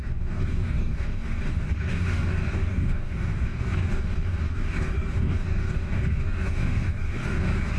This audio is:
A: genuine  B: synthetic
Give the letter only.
B